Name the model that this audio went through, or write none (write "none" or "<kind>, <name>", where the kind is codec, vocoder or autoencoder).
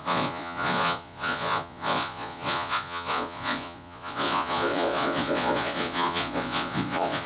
vocoder, Vocos